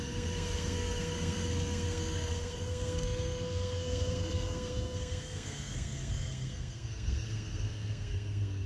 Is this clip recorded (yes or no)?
no